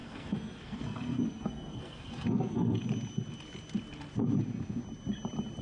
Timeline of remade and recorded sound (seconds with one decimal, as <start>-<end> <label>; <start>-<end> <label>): 0.0-2.8 remade; 2.8-5.6 recorded